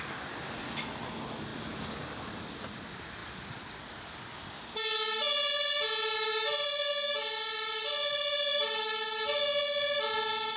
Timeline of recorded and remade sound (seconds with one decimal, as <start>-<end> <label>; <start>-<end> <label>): 0.0-10.6 recorded